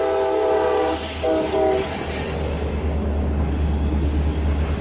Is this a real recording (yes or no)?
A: yes